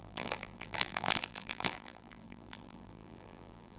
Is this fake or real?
fake